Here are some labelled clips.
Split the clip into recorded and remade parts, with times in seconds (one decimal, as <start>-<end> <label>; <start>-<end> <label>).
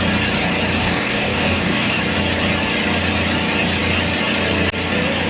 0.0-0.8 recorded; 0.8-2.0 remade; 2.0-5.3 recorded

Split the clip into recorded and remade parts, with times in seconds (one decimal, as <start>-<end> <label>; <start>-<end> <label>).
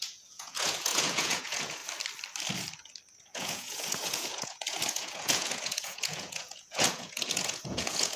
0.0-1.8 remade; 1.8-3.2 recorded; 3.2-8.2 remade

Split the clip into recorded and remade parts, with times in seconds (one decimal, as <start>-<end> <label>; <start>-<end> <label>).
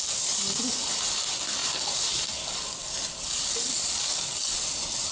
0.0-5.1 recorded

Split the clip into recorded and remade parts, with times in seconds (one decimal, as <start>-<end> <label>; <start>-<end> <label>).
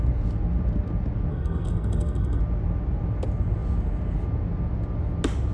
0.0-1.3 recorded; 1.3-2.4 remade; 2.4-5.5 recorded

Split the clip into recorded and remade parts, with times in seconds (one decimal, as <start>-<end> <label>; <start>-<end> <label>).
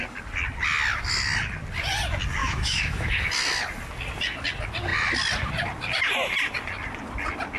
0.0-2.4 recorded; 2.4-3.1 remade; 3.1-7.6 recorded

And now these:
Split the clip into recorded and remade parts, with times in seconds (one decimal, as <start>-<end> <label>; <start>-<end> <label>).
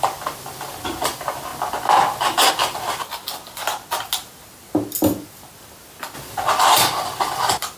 0.0-7.8 recorded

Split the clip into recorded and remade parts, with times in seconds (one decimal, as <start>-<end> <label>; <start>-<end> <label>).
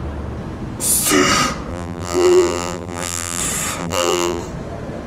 0.0-1.7 recorded; 1.7-3.4 remade; 3.4-3.8 recorded; 3.8-4.4 remade; 4.4-5.1 recorded